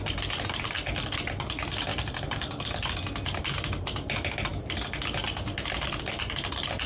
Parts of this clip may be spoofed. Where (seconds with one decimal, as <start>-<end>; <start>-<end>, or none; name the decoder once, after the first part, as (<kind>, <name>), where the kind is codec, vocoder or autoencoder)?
none